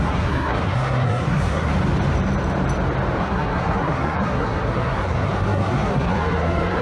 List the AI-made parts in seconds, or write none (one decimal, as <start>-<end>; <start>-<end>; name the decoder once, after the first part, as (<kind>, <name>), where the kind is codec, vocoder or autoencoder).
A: 0.0-1.7 (codec, SNAC); 3.2-6.8